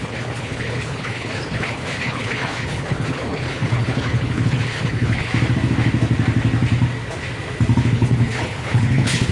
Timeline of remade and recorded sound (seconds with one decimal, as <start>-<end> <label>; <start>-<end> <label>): 0.0-5.3 remade; 5.3-7.9 recorded; 7.9-9.3 remade